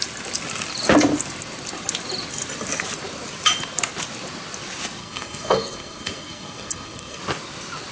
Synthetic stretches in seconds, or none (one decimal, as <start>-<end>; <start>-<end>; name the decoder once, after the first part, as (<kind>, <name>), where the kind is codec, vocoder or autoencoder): 5.0-7.2 (codec, SNAC)